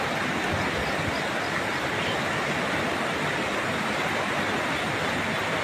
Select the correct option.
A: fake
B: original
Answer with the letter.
B